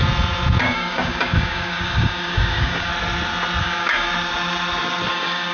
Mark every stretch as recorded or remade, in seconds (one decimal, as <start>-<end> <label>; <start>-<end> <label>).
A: 0.0-0.6 recorded; 0.6-2.9 remade; 2.9-3.6 recorded; 3.6-4.1 remade; 4.1-5.1 recorded; 5.1-5.5 remade